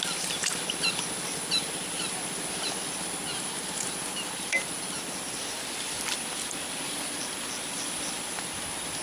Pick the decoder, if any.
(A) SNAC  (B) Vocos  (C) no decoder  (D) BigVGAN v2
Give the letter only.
C